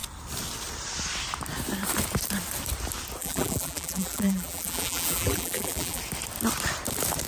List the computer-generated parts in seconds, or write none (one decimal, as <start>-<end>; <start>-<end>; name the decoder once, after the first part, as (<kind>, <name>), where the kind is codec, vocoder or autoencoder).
3.2-6.0 (vocoder, BigVGAN v2)

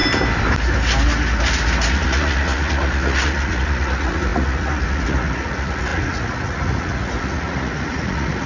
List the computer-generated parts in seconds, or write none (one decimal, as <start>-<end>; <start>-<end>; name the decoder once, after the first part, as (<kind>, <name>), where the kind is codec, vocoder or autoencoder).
1.9-8.5 (vocoder, Vocos)

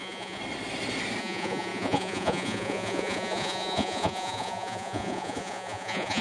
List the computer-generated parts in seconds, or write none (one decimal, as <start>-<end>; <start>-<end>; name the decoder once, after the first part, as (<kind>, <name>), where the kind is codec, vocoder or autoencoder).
0.0-0.4 (vocoder, Vocos); 1.2-6.2

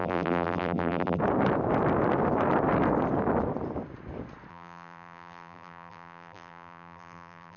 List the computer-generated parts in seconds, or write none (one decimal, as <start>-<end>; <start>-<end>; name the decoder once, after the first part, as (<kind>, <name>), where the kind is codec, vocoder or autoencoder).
0.0-1.2 (vocoder, BigVGAN v2); 4.5-7.6

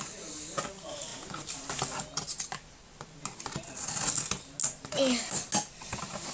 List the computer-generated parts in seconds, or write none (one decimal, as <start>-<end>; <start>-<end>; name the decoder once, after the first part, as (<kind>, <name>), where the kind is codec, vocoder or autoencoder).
none